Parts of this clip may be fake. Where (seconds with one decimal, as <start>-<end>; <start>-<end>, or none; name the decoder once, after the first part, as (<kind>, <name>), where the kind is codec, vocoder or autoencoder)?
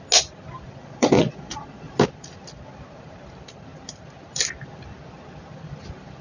0.8-1.9 (vocoder, Vocos)